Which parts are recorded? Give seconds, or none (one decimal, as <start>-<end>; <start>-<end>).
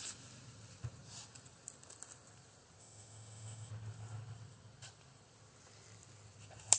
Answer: 0.0-2.8; 3.7-6.8